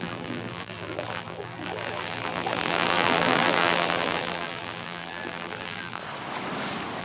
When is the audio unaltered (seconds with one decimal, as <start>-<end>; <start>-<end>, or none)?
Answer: 6.0-7.0